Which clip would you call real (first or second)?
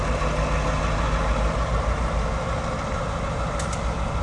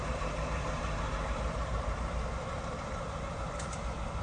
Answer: first